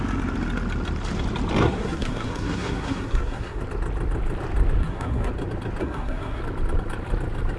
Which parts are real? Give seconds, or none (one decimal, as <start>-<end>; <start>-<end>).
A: 0.0-1.6; 3.6-4.8; 5.3-5.8; 6.4-7.6